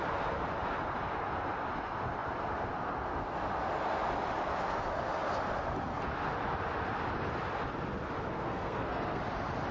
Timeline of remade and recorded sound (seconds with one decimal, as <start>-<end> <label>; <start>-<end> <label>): 0.0-8.3 recorded; 8.3-9.2 remade; 9.2-9.7 recorded